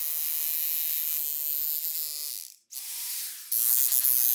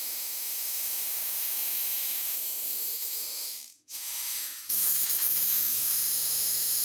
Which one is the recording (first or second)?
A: first